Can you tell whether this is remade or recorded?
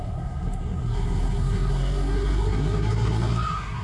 remade